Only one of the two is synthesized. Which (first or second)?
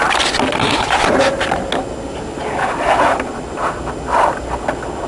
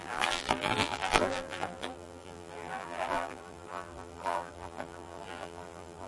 second